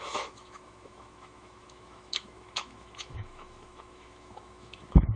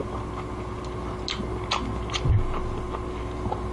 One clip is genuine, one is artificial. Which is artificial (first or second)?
first